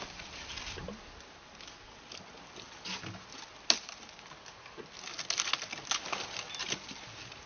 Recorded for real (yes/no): yes